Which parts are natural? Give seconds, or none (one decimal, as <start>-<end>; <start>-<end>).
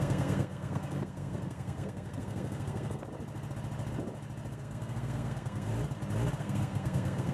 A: 3.0-4.5; 5.7-6.4